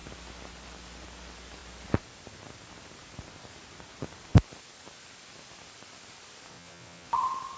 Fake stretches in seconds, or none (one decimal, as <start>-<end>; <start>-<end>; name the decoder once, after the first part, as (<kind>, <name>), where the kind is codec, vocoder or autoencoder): 6.5-7.1 (vocoder, WaveNeXt)